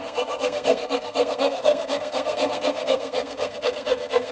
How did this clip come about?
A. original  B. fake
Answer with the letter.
B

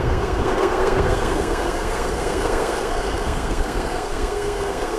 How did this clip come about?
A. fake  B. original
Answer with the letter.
A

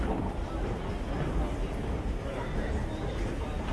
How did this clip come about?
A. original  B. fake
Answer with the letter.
A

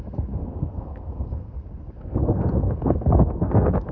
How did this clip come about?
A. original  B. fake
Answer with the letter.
B